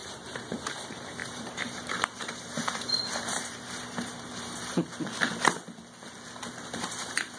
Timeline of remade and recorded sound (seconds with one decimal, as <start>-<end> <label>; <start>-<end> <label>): 0.0-4.9 remade; 4.9-6.9 recorded; 6.9-7.4 remade